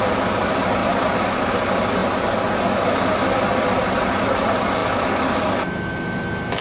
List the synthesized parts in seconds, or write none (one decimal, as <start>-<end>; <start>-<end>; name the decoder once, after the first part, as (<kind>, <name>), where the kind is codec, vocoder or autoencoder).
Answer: none

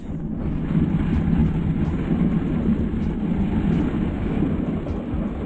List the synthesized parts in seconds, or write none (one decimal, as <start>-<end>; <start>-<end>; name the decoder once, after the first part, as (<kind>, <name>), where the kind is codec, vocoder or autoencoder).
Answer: none

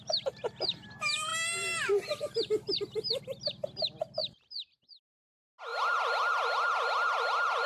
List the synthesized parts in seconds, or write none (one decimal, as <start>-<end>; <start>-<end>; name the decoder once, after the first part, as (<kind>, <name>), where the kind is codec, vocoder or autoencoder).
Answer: 4.2-5.3 (vocoder, BigVGAN v2)